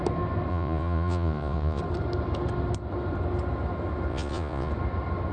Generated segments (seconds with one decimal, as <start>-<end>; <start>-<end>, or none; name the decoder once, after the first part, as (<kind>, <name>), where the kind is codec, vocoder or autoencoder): 0.5-1.8 (vocoder, Vocos); 4.1-4.7